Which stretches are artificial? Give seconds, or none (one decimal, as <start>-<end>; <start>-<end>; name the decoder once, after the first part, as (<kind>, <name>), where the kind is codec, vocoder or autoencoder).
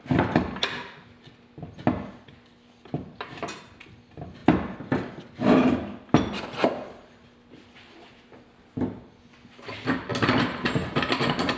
none